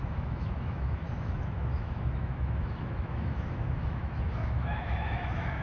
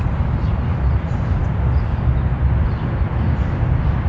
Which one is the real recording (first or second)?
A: second